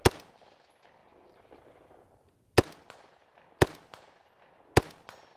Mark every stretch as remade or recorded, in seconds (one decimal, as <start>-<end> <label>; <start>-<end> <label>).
0.0-5.4 recorded